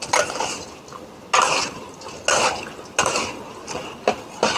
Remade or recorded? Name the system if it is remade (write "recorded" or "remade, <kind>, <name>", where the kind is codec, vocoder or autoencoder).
recorded